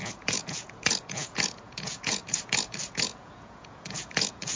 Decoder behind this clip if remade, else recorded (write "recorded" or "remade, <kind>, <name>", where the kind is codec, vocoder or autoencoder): remade, vocoder, Vocos